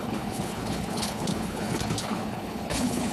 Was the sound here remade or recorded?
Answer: remade